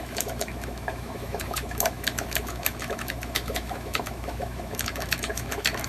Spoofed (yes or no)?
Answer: yes